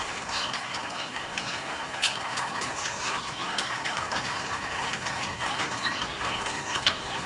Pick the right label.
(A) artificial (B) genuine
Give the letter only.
A